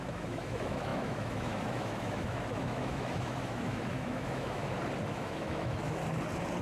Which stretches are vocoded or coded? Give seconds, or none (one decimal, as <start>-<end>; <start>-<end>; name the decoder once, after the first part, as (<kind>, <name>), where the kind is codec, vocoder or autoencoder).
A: 0.0-4.6 (autoencoder, DAC-VAE); 5.1-6.0